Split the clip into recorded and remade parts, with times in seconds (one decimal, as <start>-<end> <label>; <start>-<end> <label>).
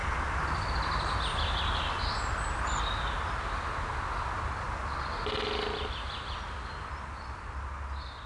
0.0-8.3 recorded